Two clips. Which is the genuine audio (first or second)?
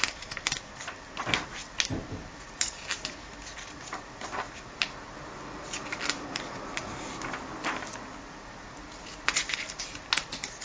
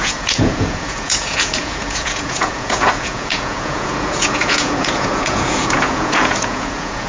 first